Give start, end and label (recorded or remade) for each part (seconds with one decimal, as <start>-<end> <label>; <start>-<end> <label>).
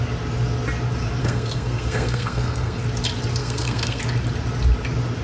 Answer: 0.0-1.2 recorded; 1.2-2.8 remade; 2.8-3.4 recorded; 3.4-4.0 remade; 4.0-5.2 recorded